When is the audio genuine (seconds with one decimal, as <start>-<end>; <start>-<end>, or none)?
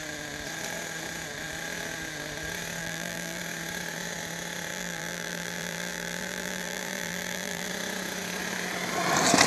0.0-2.8; 3.4-4.7; 7.7-9.5